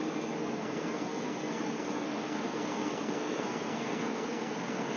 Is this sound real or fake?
fake